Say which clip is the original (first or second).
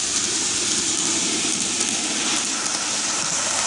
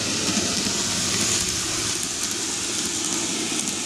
second